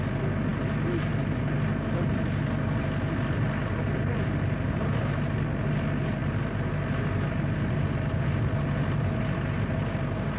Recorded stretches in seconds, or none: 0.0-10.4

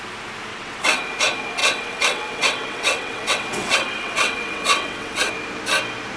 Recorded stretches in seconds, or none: 0.0-0.5; 1.0-1.6; 5.3-6.2

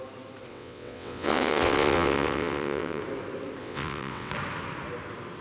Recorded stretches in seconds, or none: 0.0-0.5; 3.0-3.6; 4.3-5.4

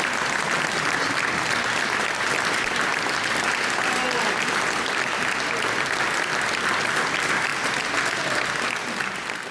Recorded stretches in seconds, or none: 0.0-9.5

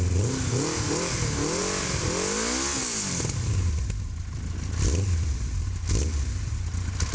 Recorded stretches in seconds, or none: 0.0-7.1

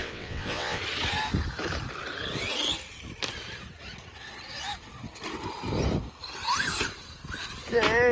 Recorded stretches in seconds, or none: 0.8-8.1

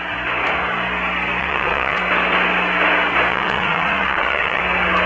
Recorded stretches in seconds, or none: 0.0-1.4; 2.0-3.3; 4.6-5.1

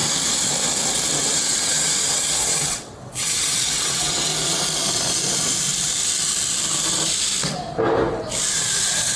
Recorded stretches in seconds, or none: 0.0-1.1; 4.3-9.2